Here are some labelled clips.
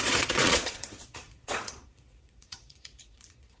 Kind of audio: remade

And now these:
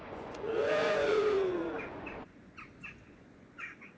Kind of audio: remade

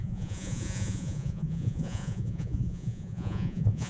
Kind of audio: remade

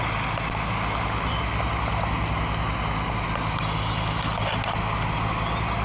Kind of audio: recorded